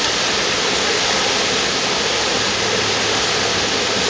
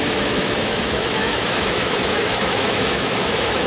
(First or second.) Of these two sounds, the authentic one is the first